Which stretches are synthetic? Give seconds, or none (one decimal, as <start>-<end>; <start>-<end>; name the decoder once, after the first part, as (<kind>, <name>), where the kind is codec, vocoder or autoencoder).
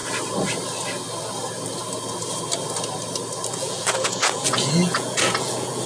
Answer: 3.5-5.9 (vocoder, Vocos)